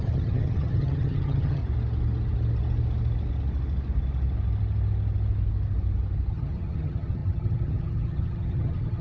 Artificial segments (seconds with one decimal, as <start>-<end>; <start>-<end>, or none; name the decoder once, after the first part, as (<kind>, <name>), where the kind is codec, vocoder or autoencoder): 0.0-1.6 (vocoder, HiFi-GAN); 6.3-9.0